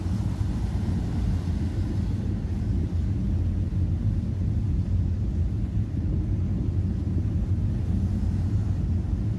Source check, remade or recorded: recorded